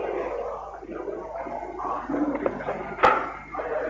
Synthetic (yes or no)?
no